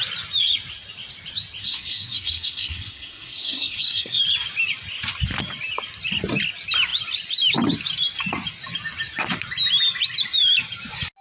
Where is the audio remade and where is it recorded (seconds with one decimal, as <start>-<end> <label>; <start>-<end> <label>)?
0.0-1.6 recorded; 1.6-4.2 remade; 4.2-11.2 recorded